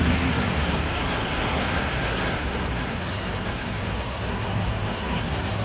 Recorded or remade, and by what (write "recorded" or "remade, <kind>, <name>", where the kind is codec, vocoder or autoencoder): remade, codec, SNAC